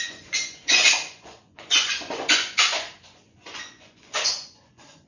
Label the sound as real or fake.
fake